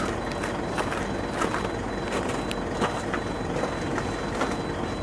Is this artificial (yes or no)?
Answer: no